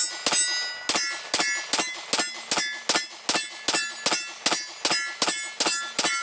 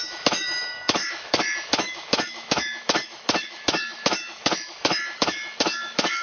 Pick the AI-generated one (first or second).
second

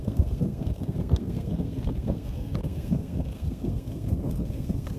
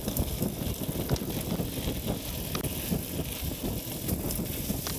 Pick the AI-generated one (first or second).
first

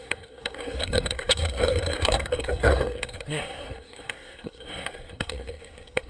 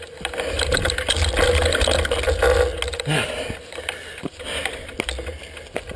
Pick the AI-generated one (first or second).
first